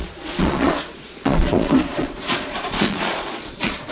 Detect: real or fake fake